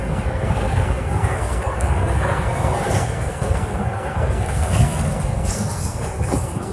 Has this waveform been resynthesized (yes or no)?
yes